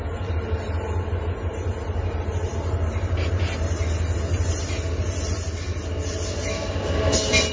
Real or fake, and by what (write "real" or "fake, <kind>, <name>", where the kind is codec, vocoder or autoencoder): real